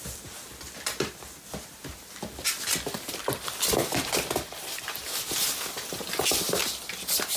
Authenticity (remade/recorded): recorded